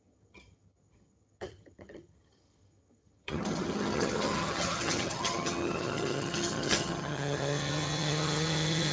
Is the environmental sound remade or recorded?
remade